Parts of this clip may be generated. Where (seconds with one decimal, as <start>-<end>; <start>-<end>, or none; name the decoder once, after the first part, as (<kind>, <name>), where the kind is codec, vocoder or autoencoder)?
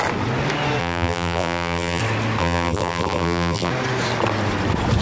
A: 0.8-2.0 (vocoder, BigVGAN v2); 2.4-3.7